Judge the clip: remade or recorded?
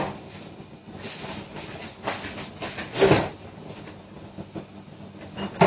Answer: recorded